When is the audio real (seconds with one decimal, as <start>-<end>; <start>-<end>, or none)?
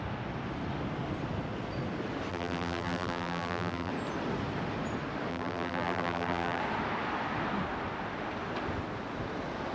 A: 0.0-2.3; 3.9-5.3; 6.6-9.7